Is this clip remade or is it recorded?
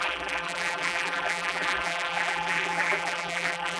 remade